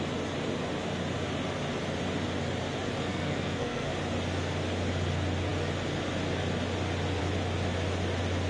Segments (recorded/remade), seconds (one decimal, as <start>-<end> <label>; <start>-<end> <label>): 0.0-3.1 recorded; 3.1-3.9 remade; 3.9-8.5 recorded